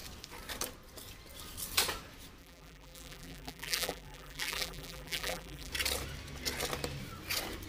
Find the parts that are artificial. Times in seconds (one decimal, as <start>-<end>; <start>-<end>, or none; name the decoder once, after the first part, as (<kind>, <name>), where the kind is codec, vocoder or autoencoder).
2.4-5.7 (vocoder, BigVGAN v2)